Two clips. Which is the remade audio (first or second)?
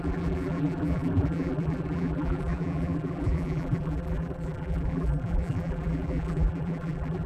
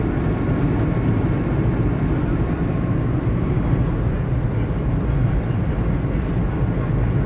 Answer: first